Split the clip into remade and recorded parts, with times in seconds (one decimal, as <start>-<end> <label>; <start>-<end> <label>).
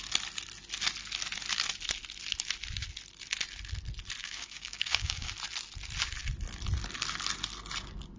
0.0-4.2 recorded; 4.2-5.3 remade; 5.3-8.2 recorded